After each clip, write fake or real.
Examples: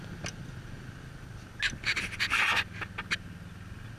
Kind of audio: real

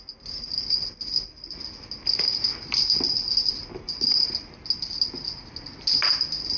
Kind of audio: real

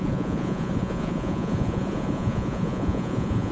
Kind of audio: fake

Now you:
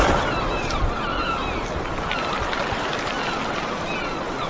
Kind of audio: real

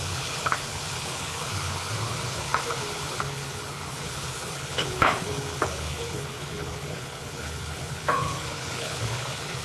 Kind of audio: fake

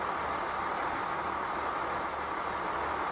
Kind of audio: real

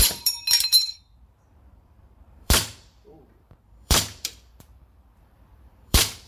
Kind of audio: fake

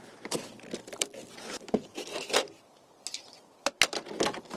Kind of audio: real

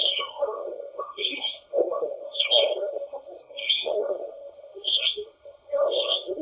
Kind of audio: fake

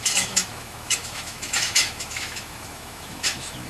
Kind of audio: fake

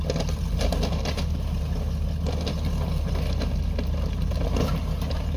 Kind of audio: real